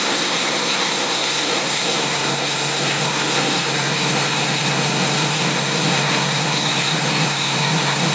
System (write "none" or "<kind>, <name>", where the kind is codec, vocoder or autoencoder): codec, SNAC